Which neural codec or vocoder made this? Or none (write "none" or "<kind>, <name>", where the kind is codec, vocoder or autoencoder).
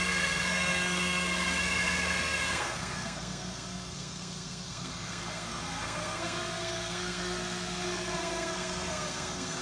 codec, SNAC